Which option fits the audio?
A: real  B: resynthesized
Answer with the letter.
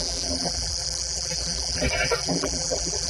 B